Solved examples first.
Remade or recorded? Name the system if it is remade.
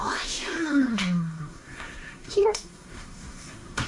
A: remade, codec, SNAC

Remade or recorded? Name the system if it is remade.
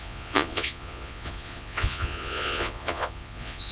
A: remade, vocoder, Vocos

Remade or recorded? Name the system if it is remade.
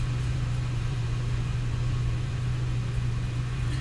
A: remade, vocoder, Vocos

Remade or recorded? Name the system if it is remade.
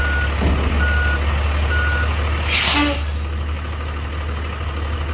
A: recorded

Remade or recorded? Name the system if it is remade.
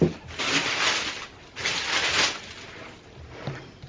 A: recorded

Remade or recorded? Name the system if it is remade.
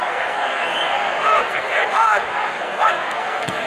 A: remade, codec, SNAC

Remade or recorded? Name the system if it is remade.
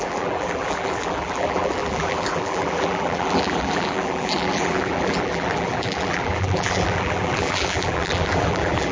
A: remade, vocoder, BigVGAN v2